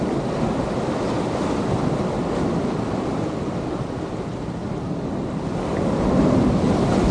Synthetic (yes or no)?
no